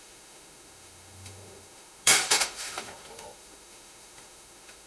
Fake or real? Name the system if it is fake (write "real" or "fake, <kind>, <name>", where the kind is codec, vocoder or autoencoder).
fake, autoencoder, DAC-VAE